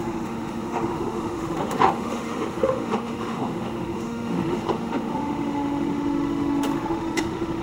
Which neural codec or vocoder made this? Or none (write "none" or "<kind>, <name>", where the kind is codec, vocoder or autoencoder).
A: autoencoder, DAC-VAE